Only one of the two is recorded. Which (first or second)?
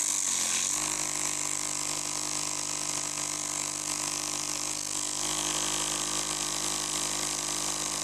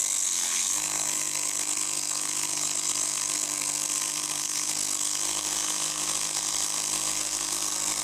first